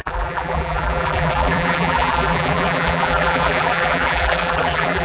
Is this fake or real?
fake